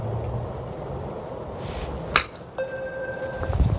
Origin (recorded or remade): recorded